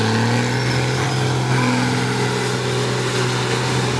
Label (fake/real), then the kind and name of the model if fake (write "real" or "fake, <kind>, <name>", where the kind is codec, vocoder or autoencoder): real